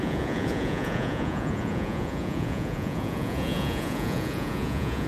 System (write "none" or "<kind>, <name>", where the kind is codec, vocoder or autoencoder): vocoder, Vocos